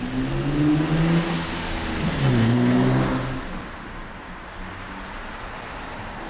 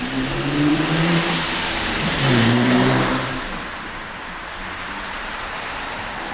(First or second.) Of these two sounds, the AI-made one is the second